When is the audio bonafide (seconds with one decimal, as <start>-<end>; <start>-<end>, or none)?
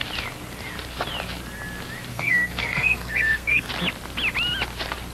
0.0-2.1; 3.7-5.1